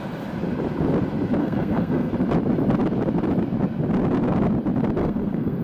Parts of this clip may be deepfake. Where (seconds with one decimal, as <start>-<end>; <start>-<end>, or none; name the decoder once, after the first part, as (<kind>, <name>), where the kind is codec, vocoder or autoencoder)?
1.4-2.1 (codec, SNAC); 5.0-5.6